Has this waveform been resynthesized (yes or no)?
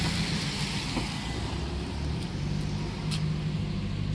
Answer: no